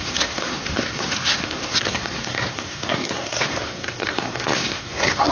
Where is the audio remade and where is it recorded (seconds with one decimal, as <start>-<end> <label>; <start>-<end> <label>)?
0.0-5.3 remade